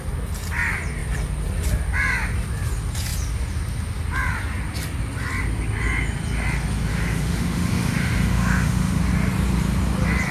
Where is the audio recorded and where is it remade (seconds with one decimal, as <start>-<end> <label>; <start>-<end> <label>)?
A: 0.0-6.9 recorded; 6.9-9.0 remade; 9.0-10.3 recorded